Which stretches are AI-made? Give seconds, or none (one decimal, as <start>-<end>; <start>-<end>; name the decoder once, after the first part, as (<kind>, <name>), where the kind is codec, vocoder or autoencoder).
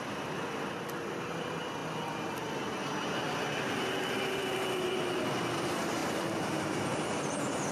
none